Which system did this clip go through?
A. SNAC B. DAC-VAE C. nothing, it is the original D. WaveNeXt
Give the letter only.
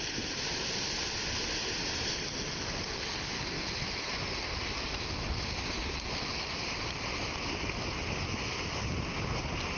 C